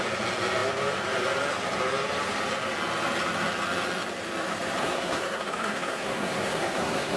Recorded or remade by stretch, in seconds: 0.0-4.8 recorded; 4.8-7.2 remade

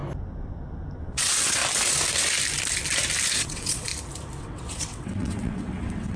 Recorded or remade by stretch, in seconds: 0.0-1.0 recorded; 1.0-1.6 remade; 1.6-3.3 recorded; 3.3-3.9 remade; 3.9-4.4 recorded; 4.4-6.2 remade

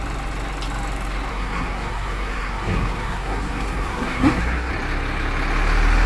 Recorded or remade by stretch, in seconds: 0.0-1.3 recorded; 1.3-4.7 remade; 4.7-6.1 recorded

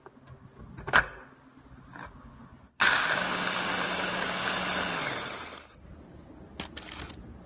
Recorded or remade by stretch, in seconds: 0.0-2.0 recorded; 2.0-4.6 remade; 4.6-7.5 recorded